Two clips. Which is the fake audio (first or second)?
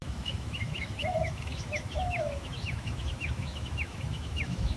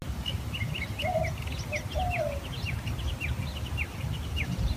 first